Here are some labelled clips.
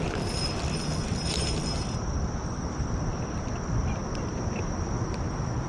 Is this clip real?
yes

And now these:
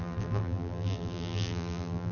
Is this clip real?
no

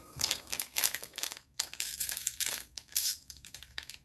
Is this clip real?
no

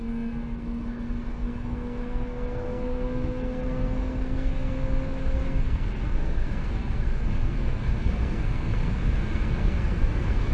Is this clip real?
no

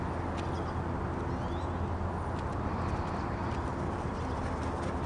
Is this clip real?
yes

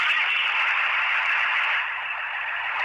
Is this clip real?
yes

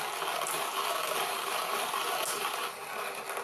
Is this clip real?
yes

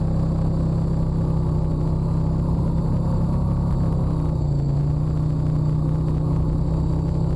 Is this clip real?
yes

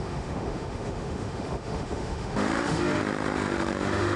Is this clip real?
no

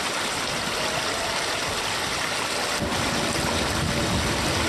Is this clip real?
yes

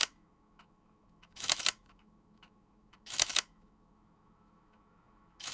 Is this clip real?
no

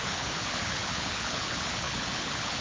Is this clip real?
no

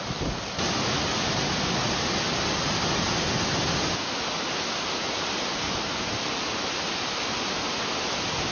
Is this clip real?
yes